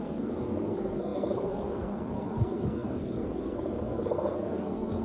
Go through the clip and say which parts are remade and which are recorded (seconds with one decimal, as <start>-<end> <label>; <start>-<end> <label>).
0.0-5.0 remade